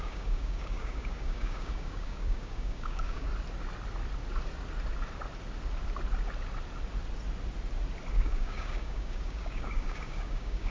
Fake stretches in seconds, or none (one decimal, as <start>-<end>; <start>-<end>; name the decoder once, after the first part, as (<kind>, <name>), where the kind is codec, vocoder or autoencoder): 0.0-3.3 (codec, DAC); 8.1-10.7